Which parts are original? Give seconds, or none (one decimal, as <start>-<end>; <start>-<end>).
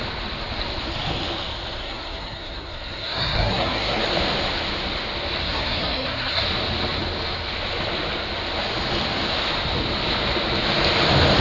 0.0-1.8; 4.0-5.4; 6.4-11.4